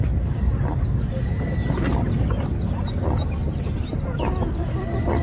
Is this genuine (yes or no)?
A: yes